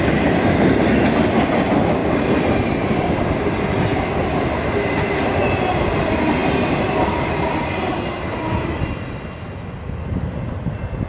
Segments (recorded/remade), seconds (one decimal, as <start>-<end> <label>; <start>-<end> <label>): 0.0-11.1 recorded